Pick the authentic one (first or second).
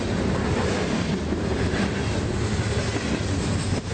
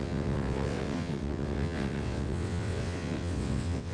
first